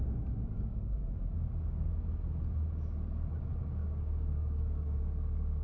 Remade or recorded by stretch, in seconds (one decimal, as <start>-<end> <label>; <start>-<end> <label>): 0.0-0.7 recorded; 0.7-1.9 remade; 1.9-3.8 recorded; 3.8-5.0 remade; 5.0-5.6 recorded